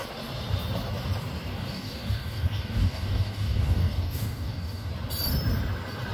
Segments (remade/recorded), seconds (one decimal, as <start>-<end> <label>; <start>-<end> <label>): 0.0-1.5 recorded; 1.5-4.9 remade; 4.9-6.1 recorded